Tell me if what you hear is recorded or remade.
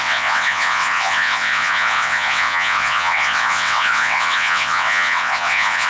remade